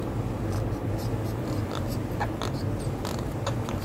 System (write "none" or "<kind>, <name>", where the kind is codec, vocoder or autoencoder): none